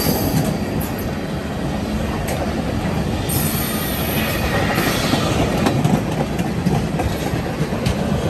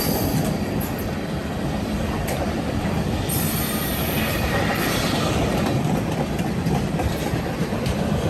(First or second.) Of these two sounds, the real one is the first